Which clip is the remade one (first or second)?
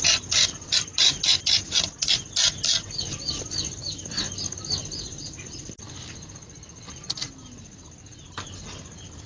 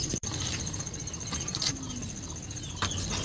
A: second